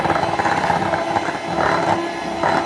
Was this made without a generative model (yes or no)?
yes